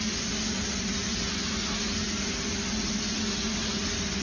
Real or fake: real